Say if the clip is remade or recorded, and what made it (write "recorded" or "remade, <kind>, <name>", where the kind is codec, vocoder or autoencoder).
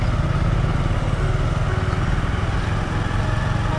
recorded